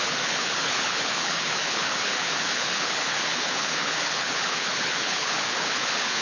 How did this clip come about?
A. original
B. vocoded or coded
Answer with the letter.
B